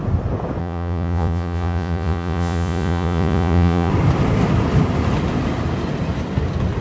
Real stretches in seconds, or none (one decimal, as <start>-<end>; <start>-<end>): 0.0-0.6; 3.9-6.8